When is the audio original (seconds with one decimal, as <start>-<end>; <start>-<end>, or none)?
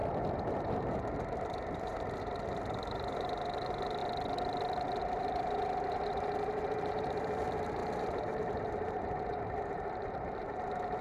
0.0-0.5; 4.0-5.0